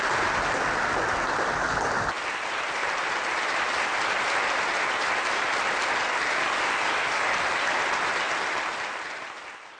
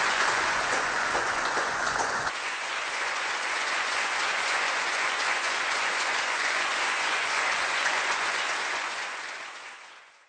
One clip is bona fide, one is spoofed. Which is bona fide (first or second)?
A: first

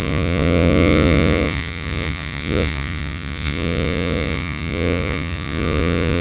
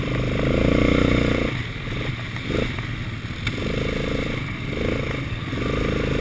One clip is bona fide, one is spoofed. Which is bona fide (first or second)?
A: second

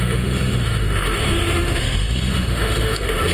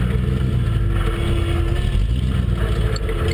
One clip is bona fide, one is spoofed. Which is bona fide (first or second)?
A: second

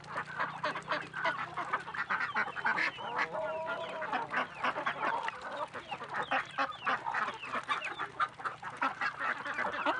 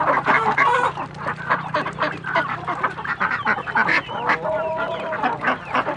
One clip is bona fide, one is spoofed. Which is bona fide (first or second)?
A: first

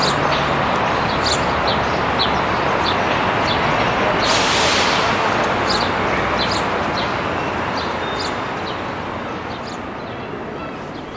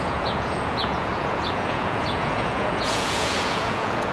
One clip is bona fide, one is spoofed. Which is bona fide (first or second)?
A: first